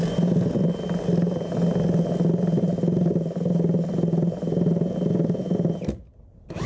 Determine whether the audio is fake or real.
real